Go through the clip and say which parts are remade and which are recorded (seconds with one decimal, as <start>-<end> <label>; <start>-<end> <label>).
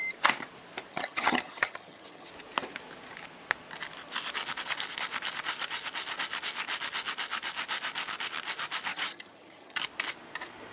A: 0.0-0.9 recorded; 0.9-2.3 remade; 2.3-8.9 recorded; 8.9-9.8 remade; 9.8-10.7 recorded